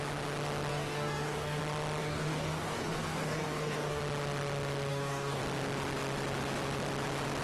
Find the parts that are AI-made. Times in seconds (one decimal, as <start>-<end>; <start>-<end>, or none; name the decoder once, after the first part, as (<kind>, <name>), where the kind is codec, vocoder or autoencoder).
0.7-1.6 (codec, DAC); 2.0-4.0; 4.9-5.4